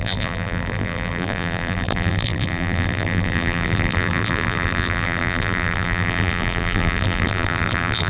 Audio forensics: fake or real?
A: fake